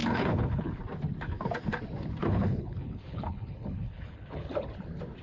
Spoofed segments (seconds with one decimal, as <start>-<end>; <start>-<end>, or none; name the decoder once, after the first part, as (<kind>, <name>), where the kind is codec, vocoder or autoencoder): 0.0-0.8 (codec, HILCodec); 2.2-4.5